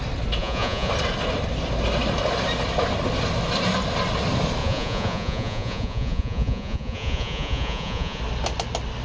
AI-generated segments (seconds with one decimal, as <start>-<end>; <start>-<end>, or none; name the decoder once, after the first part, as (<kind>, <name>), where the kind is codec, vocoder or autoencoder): 0.4-0.9 (vocoder, Vocos); 4.6-8.2